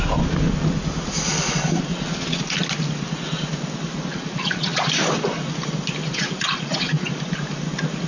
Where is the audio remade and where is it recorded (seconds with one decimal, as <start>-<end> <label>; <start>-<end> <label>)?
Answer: 0.0-1.9 recorded; 1.9-2.4 remade; 2.4-4.1 recorded; 4.1-4.9 remade; 4.9-6.0 recorded; 6.0-7.1 remade; 7.1-8.1 recorded